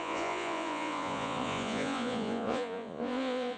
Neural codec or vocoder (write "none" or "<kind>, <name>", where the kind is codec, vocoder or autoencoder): vocoder, Vocos